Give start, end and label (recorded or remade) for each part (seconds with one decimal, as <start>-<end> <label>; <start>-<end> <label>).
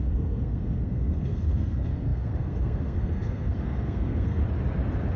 0.0-4.4 remade; 4.4-5.2 recorded